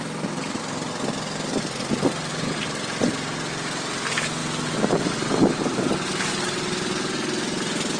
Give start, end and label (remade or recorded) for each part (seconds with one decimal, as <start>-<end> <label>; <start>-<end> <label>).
0.0-8.0 recorded